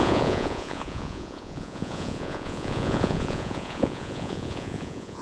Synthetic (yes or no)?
yes